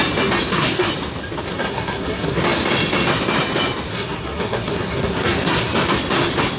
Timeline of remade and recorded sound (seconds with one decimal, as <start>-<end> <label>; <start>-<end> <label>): 0.0-0.5 recorded; 0.5-0.9 remade; 0.9-1.5 recorded; 1.5-2.4 remade; 2.4-3.9 recorded; 3.9-5.7 remade; 5.7-6.6 recorded